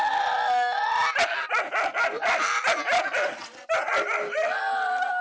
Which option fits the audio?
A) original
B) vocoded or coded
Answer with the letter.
A